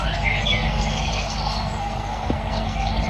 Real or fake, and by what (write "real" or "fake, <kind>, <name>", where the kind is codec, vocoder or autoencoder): fake, codec, SNAC